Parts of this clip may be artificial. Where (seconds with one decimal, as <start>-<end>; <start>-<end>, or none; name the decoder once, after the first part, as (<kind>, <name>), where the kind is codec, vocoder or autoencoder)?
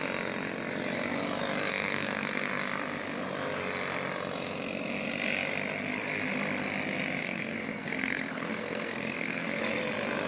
1.7-2.5 (codec, SNAC); 7.2-9.6